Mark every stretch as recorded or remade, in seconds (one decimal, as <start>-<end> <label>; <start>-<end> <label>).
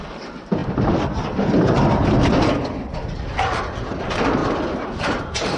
0.0-0.6 remade; 0.6-4.0 recorded; 4.0-4.4 remade; 4.4-5.0 recorded; 5.0-5.6 remade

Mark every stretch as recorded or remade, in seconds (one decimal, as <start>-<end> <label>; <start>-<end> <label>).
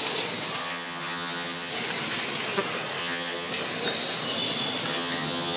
0.0-0.6 recorded; 0.6-1.7 remade; 1.7-3.0 recorded; 3.0-3.5 remade; 3.5-4.9 recorded; 4.9-5.6 remade